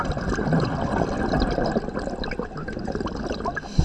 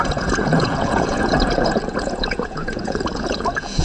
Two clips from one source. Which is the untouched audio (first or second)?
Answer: first